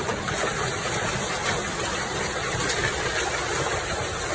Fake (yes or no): no